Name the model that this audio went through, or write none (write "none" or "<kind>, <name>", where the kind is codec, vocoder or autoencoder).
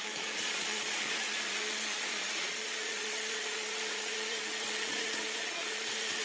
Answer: vocoder, Vocos